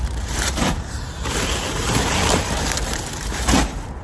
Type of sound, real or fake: fake